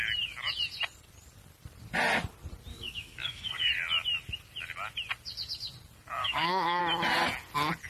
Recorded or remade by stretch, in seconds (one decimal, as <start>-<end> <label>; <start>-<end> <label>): 0.0-2.7 recorded; 2.7-3.7 remade; 3.7-6.2 recorded; 6.2-6.8 remade; 6.8-7.9 recorded